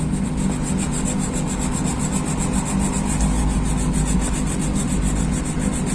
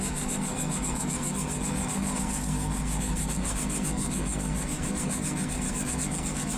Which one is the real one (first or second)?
first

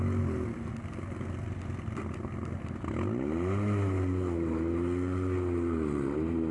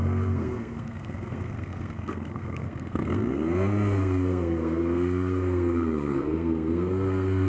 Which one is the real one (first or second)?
first